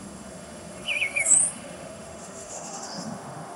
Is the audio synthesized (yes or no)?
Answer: yes